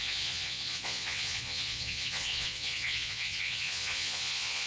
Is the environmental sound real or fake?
fake